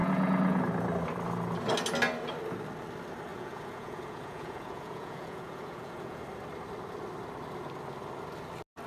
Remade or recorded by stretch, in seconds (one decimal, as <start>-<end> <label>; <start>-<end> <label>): 0.0-0.6 remade; 0.6-3.3 recorded; 3.3-6.2 remade; 6.2-8.9 recorded